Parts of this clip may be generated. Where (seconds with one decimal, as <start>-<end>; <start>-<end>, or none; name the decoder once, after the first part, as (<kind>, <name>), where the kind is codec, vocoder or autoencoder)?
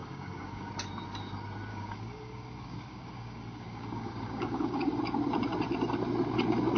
0.0-0.7 (codec, DAC); 1.7-5.0